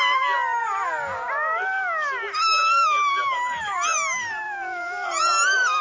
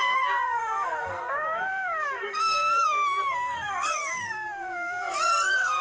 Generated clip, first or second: second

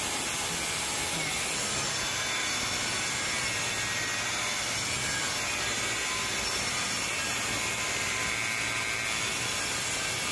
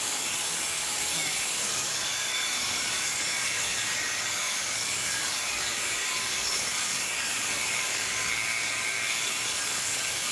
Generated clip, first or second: second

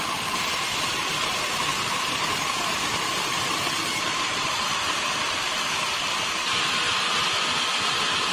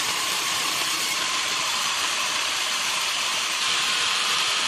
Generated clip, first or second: second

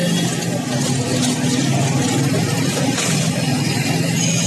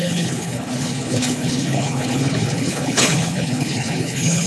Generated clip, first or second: second